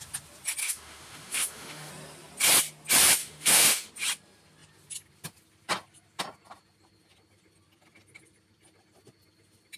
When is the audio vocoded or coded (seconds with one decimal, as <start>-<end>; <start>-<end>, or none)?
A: 0.6-1.9; 3.2-3.9